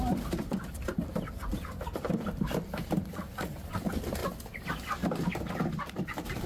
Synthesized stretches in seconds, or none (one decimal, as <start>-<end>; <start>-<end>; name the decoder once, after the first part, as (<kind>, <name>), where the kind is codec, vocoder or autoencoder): 0.0-4.2 (vocoder, BigVGAN v2); 5.5-6.5